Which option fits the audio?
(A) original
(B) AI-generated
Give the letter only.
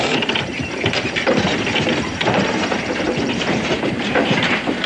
B